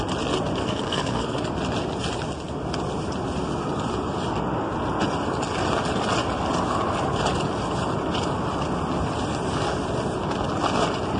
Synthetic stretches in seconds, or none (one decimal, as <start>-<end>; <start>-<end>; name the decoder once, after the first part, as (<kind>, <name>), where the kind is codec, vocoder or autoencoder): 0.6-1.4 (codec, SNAC)